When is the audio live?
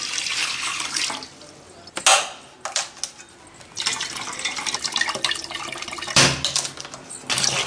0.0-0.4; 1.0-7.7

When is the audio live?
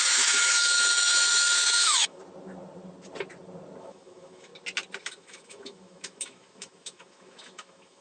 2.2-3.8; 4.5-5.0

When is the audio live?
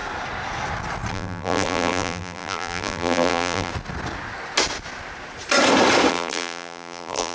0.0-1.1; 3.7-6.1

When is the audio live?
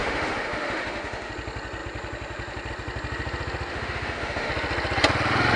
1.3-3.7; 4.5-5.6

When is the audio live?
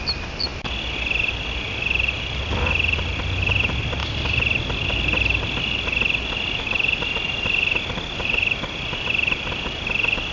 0.0-10.3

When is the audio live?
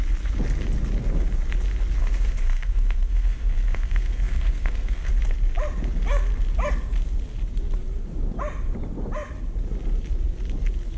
0.0-2.0; 5.1-11.0